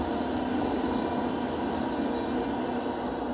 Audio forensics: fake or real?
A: real